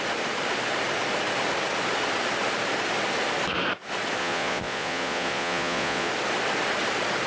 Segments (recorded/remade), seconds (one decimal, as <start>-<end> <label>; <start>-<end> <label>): 0.0-4.2 recorded; 4.2-6.1 remade; 6.1-7.3 recorded